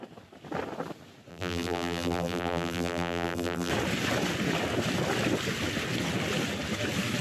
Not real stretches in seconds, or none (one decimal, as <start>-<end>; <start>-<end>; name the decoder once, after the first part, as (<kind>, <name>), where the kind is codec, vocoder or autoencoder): 1.3-3.7 (vocoder, BigVGAN v2)